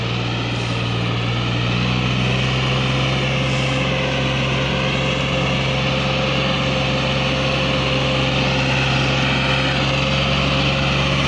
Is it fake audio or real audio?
real